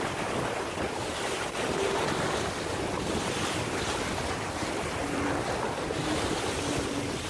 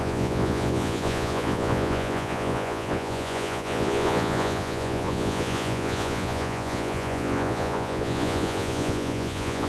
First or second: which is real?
first